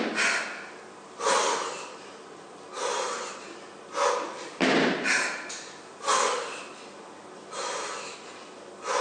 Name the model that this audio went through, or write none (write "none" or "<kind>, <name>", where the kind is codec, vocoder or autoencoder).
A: none